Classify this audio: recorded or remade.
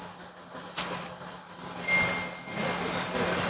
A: recorded